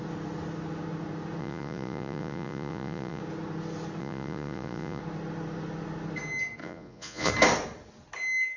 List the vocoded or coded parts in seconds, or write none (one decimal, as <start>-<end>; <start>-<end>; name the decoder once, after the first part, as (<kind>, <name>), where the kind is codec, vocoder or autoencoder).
1.4-3.2 (vocoder, Vocos); 4.0-5.0; 6.6-7.3